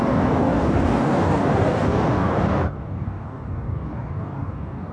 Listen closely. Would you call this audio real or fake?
fake